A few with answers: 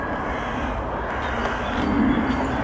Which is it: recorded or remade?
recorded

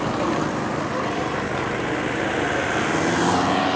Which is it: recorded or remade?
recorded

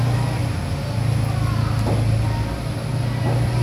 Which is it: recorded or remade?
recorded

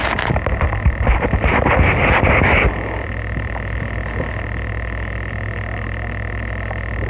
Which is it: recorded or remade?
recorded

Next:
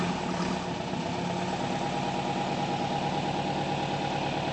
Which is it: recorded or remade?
recorded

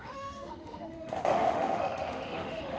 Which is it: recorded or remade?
remade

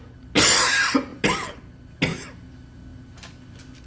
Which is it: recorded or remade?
recorded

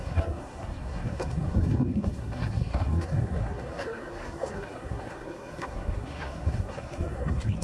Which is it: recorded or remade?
remade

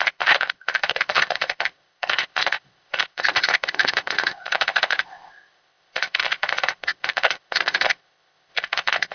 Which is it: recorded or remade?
remade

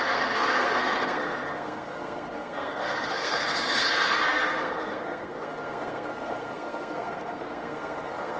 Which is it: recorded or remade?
remade